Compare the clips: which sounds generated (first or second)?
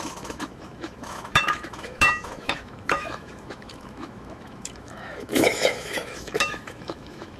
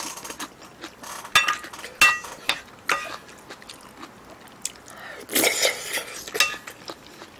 first